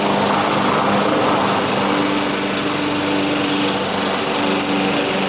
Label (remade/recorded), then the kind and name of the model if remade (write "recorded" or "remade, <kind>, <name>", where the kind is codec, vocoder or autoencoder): recorded